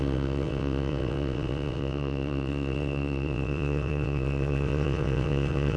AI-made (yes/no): yes